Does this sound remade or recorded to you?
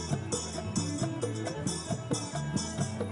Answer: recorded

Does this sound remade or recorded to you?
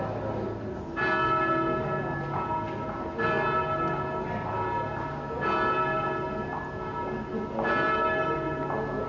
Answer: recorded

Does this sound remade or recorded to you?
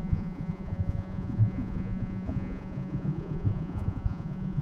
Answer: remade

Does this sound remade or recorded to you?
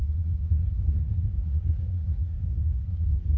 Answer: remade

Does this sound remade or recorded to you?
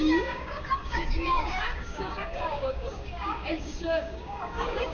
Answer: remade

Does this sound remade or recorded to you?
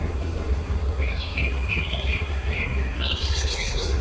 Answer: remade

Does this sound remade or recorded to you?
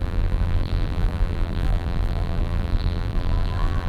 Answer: remade